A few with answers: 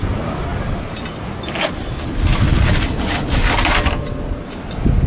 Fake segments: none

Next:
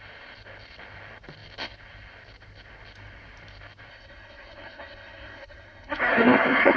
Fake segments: 3.9-6.8 (codec, SNAC)

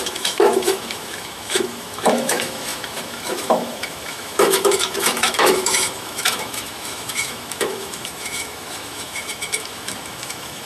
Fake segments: 0.0-10.7 (autoencoder, DAC-VAE)

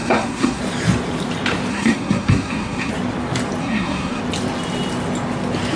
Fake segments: 0.0-0.6 (codec, SNAC); 1.7-2.9; 3.6-4.2

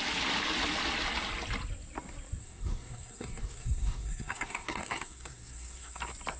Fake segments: 2.4-6.0 (codec, SNAC)